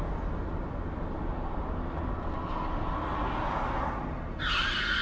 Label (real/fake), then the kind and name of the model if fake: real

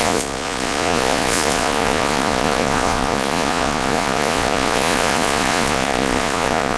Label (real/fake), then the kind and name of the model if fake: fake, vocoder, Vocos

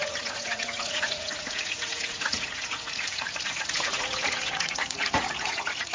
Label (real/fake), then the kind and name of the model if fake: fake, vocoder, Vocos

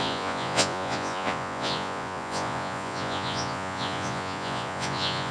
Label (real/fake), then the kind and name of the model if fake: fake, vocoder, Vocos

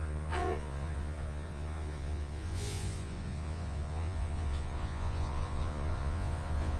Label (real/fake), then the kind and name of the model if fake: fake, vocoder, Vocos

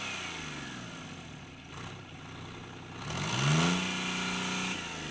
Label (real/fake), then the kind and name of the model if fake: real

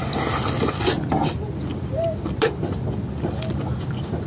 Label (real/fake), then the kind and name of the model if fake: real